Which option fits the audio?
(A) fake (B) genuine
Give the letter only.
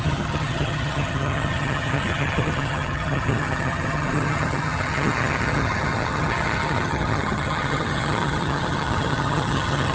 A